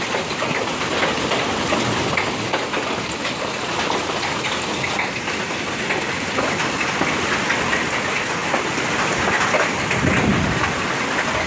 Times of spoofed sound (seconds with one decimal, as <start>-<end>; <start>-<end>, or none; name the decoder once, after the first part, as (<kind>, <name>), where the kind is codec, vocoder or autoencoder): none